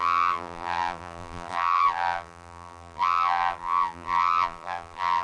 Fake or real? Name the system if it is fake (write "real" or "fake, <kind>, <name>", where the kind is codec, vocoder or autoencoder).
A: fake, vocoder, BigVGAN v2